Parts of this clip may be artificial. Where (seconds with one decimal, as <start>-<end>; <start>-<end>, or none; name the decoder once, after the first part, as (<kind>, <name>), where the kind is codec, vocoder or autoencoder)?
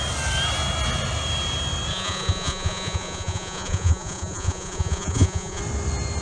1.9-5.6 (vocoder, Vocos)